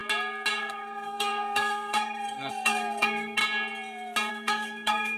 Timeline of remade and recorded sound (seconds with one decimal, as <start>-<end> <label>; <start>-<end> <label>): 0.0-0.6 recorded; 0.6-3.4 remade; 3.4-4.3 recorded; 4.3-5.2 remade